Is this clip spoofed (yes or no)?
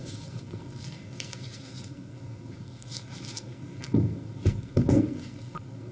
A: yes